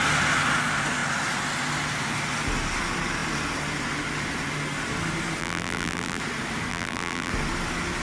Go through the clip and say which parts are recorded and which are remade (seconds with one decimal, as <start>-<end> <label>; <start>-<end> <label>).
0.0-5.4 recorded; 5.4-6.2 remade; 6.2-6.7 recorded; 6.7-7.3 remade; 7.3-8.0 recorded

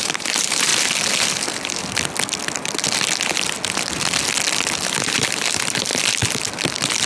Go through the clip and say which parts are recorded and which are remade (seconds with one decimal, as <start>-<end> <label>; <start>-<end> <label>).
0.0-0.7 remade; 0.7-5.0 recorded; 5.0-5.9 remade; 5.9-7.1 recorded

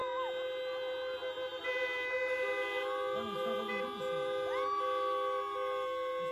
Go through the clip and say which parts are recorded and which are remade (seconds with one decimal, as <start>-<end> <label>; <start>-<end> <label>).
0.0-6.3 recorded

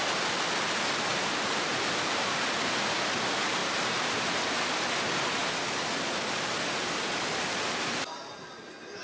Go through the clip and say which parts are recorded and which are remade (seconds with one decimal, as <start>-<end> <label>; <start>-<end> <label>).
0.0-1.1 recorded; 1.1-1.9 remade; 1.9-3.6 recorded; 3.6-4.9 remade; 4.9-9.0 recorded

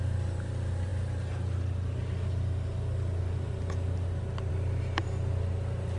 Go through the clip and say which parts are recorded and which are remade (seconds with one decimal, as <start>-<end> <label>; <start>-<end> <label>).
0.0-6.0 recorded

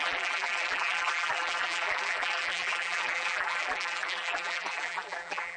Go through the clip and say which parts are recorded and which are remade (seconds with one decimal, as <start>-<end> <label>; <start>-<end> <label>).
0.0-5.6 remade

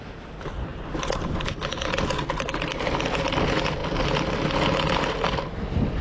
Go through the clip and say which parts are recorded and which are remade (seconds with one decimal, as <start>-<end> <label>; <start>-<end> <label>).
0.0-0.7 recorded; 0.7-2.9 remade; 2.9-6.0 recorded

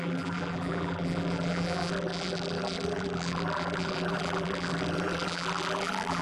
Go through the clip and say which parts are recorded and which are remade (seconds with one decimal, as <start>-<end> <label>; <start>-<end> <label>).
0.0-6.2 remade